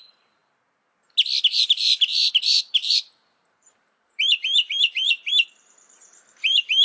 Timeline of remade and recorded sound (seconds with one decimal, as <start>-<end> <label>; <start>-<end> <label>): 0.0-0.4 remade; 0.4-1.5 recorded; 1.5-6.8 remade